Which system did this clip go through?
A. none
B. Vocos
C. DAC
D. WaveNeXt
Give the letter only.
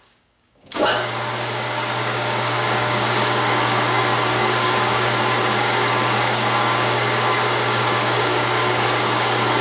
C